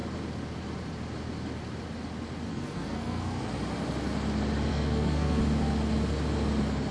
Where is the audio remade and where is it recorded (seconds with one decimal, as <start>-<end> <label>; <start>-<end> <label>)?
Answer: 0.0-2.5 recorded; 2.5-3.4 remade; 3.4-4.7 recorded; 4.7-5.4 remade; 5.4-6.9 recorded